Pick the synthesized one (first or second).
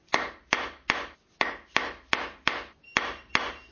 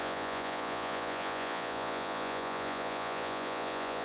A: second